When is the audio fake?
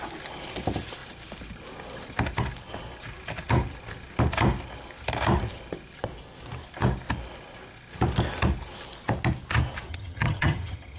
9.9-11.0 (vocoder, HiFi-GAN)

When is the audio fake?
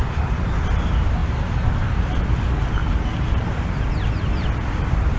none